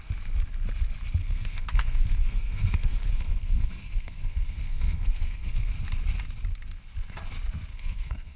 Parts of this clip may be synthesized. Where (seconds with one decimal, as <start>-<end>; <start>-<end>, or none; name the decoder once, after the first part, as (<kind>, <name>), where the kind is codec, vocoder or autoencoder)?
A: 1.2-5.7 (codec, SNAC); 7.7-8.4